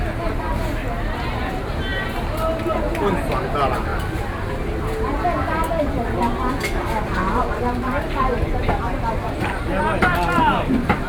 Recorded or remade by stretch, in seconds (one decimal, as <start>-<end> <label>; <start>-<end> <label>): 0.0-11.1 recorded